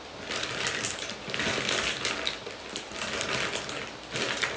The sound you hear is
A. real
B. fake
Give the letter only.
A